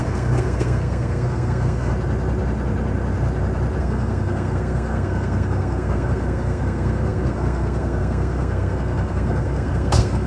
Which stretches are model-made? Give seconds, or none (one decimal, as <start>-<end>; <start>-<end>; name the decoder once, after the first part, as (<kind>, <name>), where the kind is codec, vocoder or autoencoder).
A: 0.0-1.9 (codec, SNAC); 3.8-10.3